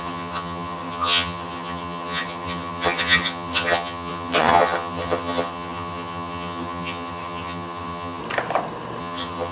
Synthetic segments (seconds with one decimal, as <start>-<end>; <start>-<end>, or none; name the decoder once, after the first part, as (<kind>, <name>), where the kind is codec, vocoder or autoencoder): 0.0-8.2 (vocoder, HiFi-GAN); 9.0-9.5